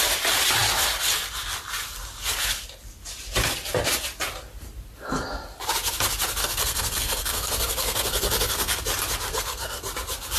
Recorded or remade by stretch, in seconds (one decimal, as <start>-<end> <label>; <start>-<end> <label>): 0.0-6.4 recorded; 6.4-8.8 remade; 8.8-9.3 recorded; 9.3-9.8 remade; 9.8-10.4 recorded